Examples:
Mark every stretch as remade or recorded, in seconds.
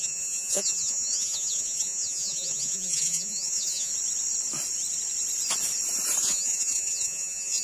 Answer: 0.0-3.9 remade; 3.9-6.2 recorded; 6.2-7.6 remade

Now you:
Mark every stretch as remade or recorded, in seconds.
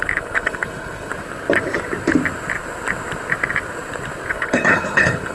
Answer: 0.0-1.1 remade; 1.1-4.3 recorded; 4.3-5.3 remade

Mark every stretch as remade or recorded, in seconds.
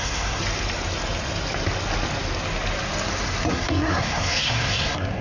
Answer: 0.0-0.4 remade; 0.4-3.5 recorded; 3.5-5.2 remade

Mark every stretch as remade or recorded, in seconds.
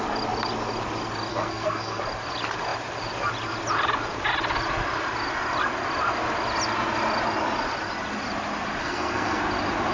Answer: 0.0-1.3 recorded; 1.3-2.0 remade; 2.0-8.8 recorded; 8.8-9.4 remade; 9.4-9.9 recorded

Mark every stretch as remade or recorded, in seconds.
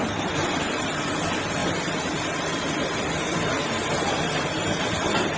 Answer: 0.0-5.4 remade